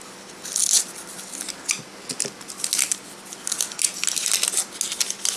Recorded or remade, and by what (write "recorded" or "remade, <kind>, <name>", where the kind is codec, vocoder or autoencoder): recorded